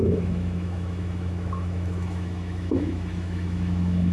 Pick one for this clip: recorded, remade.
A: remade